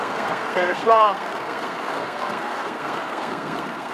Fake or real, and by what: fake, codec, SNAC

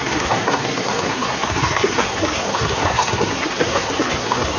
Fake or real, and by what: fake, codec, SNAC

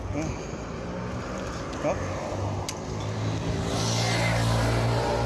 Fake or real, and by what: real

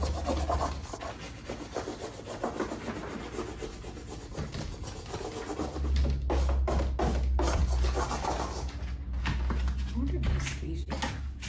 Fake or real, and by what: real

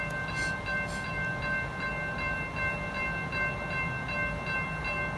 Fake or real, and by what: real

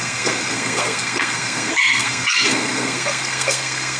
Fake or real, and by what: fake, codec, SNAC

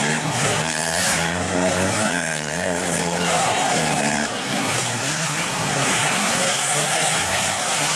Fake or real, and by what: fake, codec, SNAC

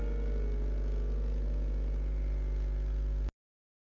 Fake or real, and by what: real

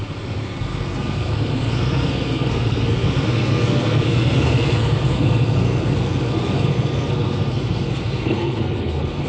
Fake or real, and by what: fake, codec, SNAC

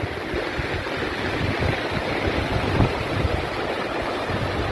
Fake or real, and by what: real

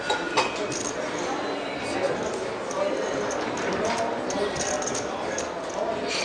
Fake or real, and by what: real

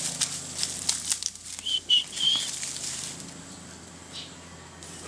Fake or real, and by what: real